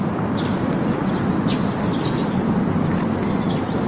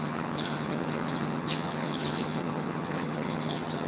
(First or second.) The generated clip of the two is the second